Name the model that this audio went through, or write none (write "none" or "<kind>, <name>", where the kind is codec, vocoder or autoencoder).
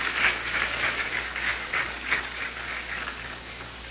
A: codec, DAC